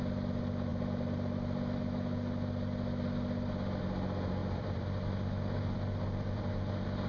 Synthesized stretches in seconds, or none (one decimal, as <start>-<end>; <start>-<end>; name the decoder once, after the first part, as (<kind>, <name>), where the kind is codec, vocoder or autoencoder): 4.4-6.5 (vocoder, BigVGAN v2)